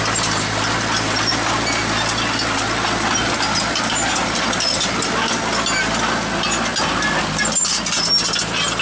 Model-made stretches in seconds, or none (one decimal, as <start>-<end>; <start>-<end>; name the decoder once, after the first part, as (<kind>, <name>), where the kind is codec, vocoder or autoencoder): none